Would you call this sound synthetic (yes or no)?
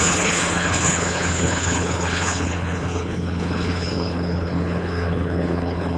yes